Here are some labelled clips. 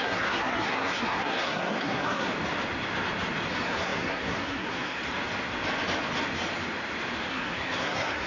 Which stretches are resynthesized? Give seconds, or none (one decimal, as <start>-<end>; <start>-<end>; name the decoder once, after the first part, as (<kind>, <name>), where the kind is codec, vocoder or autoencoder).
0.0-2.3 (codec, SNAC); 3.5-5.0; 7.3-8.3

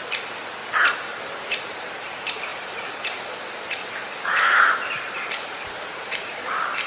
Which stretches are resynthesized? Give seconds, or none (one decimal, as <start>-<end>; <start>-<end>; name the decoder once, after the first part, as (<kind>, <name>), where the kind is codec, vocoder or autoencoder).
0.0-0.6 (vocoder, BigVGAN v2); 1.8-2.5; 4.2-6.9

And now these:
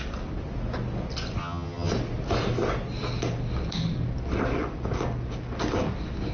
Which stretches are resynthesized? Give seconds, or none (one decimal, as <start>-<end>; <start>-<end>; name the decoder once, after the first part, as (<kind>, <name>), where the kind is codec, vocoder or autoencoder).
1.4-1.9 (vocoder, HiFi-GAN)

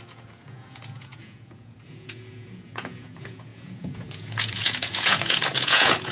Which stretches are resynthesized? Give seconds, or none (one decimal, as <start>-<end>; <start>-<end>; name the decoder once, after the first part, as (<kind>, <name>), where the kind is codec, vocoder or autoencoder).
0.0-6.1 (vocoder, Vocos)

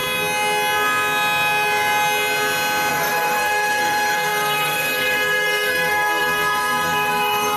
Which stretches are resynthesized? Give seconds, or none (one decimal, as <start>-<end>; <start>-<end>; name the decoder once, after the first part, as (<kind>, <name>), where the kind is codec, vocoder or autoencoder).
2.9-7.6 (codec, SNAC)